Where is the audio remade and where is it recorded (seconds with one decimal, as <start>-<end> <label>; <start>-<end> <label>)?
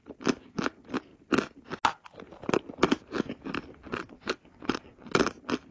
0.0-3.9 recorded; 3.9-5.1 remade; 5.1-5.7 recorded